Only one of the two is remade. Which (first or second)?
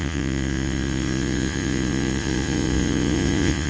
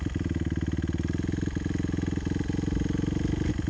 first